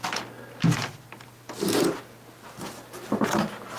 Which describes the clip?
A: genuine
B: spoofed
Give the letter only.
A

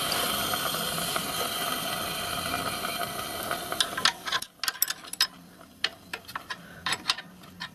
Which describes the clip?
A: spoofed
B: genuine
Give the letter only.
B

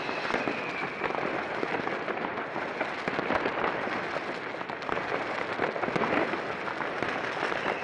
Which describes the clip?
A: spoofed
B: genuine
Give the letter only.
B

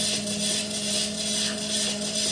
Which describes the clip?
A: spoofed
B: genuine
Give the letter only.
B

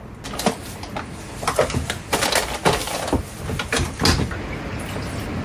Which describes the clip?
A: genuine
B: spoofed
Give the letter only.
A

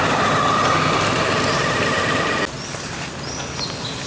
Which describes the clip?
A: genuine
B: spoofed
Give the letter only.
A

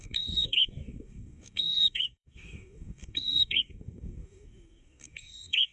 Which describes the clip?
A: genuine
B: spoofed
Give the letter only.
B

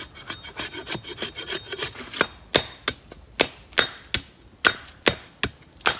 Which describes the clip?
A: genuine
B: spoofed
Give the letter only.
A